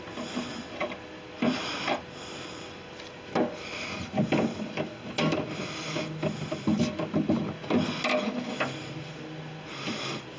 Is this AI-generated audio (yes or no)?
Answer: no